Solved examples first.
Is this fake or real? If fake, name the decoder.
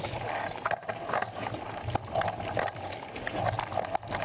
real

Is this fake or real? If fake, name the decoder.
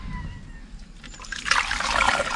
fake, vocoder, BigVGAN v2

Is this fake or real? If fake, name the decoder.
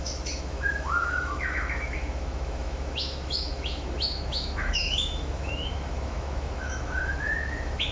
fake, autoencoder, DAC-VAE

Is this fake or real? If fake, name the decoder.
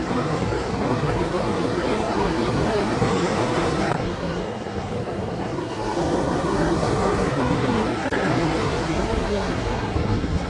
fake, codec, SNAC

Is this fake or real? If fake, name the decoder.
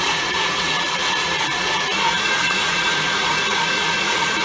fake, vocoder, Vocos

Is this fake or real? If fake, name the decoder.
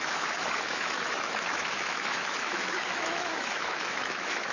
fake, autoencoder, DAC-VAE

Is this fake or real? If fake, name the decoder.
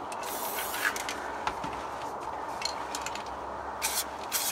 real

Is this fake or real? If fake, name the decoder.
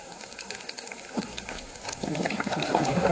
fake, codec, SNAC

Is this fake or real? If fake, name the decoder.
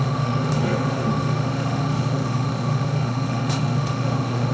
fake, autoencoder, DAC-VAE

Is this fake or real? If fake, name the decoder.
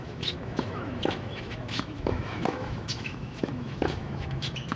fake, autoencoder, DAC-VAE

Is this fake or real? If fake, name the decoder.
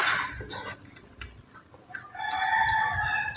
real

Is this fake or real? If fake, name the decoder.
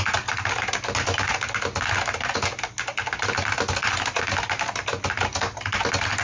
real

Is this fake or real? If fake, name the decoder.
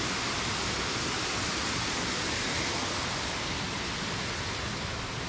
real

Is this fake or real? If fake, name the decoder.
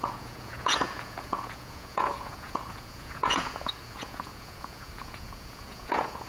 fake, vocoder, Vocos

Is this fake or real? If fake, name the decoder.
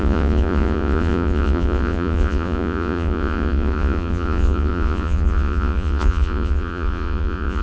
fake, vocoder, Vocos